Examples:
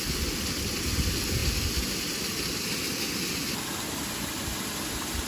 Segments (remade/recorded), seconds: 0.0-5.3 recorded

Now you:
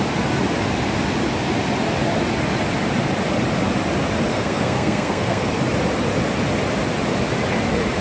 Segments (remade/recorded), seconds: 0.0-4.3 recorded; 4.3-5.5 remade; 5.5-8.0 recorded